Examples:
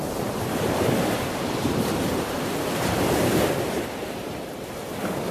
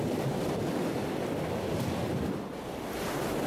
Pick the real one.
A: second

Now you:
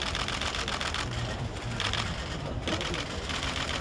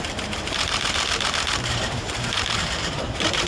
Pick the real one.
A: first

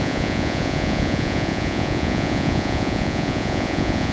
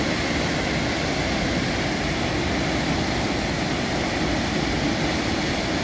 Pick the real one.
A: second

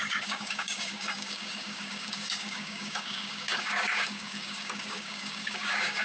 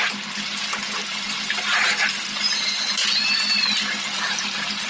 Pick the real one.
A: second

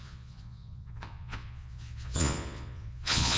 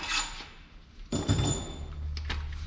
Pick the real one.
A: second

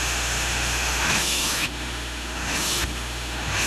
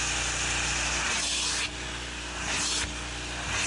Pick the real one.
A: second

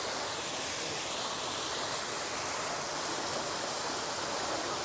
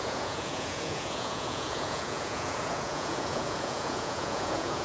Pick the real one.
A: first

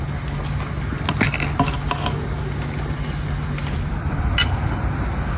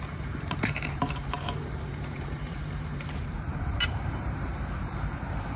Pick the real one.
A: first